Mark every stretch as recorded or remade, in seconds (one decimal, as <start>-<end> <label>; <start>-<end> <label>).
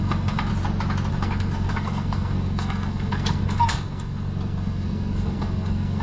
0.0-0.5 remade; 0.5-1.1 recorded; 1.1-6.0 remade